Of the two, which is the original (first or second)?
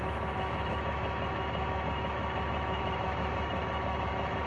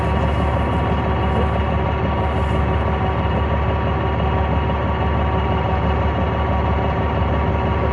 second